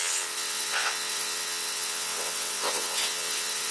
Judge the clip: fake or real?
fake